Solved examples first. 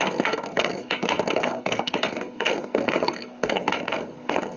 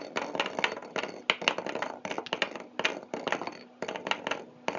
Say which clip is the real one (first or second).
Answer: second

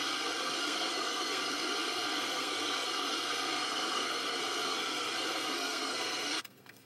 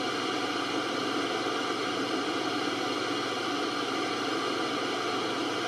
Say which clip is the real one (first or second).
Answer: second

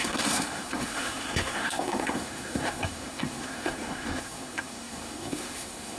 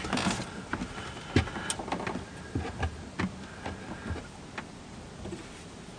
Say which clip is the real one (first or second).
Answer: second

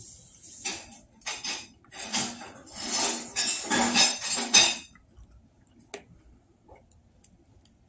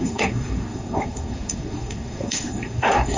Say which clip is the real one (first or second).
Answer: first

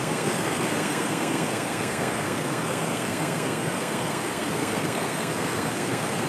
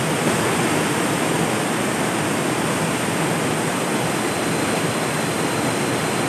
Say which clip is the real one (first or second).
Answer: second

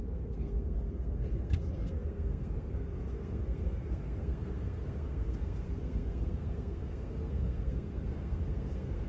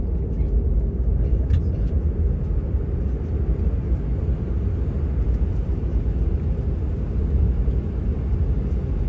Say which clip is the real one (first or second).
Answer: second